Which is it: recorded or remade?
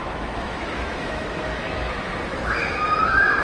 remade